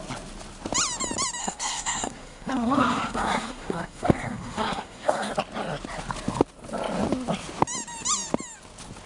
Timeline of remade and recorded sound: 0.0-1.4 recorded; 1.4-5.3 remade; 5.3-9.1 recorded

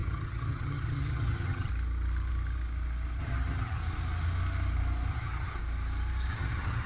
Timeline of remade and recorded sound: 0.0-1.7 remade; 1.7-3.2 recorded; 3.2-3.8 remade; 3.8-5.1 recorded; 5.1-5.6 remade; 5.6-6.3 recorded; 6.3-6.9 remade

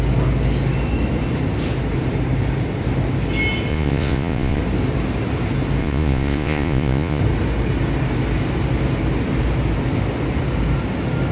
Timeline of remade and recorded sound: 0.0-3.7 recorded; 3.7-4.6 remade; 4.6-5.8 recorded; 5.8-7.2 remade; 7.2-11.3 recorded

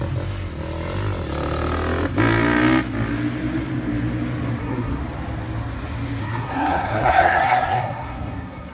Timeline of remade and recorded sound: 0.0-4.6 recorded; 4.6-5.0 remade; 5.0-6.2 recorded; 6.2-8.7 remade

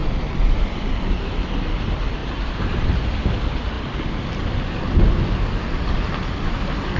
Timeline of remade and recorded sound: 0.0-1.0 remade; 1.0-2.2 recorded; 2.2-3.2 remade; 3.2-7.0 recorded

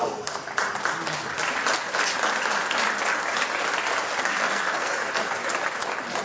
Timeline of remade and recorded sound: 0.0-0.5 remade; 0.5-4.2 recorded; 4.2-5.4 remade; 5.4-6.2 recorded

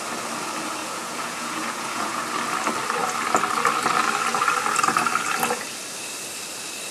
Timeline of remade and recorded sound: 0.0-0.8 recorded; 0.8-2.2 remade; 2.2-6.9 recorded

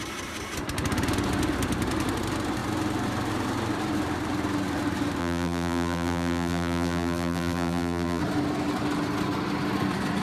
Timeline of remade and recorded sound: 0.0-5.2 recorded; 5.2-8.2 remade; 8.2-10.2 recorded